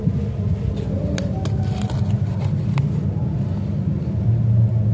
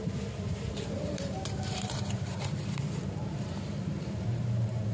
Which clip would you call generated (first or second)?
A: second